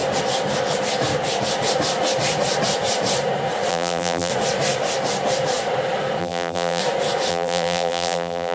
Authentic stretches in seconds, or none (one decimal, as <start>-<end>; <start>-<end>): 0.0-3.7; 4.3-6.2; 6.8-7.3